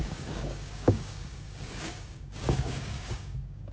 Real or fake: fake